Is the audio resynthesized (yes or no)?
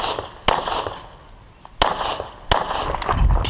no